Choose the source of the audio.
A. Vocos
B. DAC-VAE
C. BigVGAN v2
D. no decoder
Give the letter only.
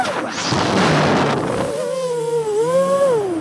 D